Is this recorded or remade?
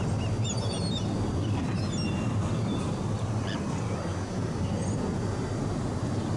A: recorded